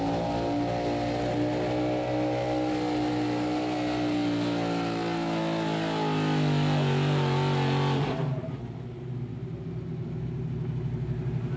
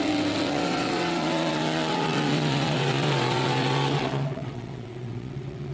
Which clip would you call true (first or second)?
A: first